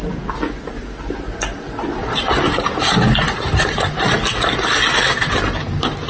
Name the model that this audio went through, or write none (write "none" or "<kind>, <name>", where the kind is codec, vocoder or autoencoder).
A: none